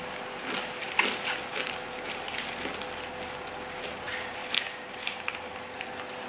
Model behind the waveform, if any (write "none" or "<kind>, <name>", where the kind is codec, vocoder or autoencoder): none